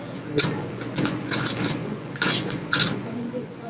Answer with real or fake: fake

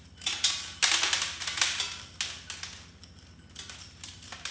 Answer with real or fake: real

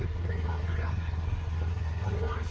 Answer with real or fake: fake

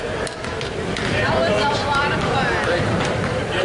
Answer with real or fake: fake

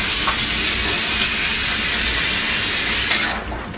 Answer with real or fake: real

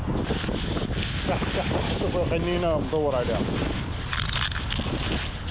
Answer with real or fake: real